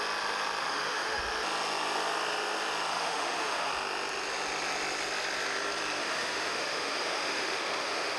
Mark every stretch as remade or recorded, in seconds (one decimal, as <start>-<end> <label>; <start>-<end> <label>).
0.0-0.6 recorded; 0.6-1.2 remade; 1.2-2.9 recorded; 2.9-3.7 remade; 3.7-6.0 recorded; 6.0-8.2 remade